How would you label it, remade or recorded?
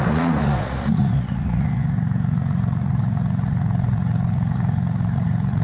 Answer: remade